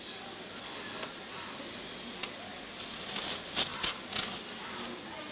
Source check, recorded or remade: recorded